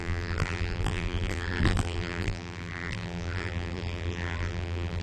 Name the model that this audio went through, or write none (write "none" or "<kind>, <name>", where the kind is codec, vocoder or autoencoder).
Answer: vocoder, BigVGAN v2